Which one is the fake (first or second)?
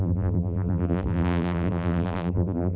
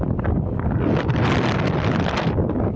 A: first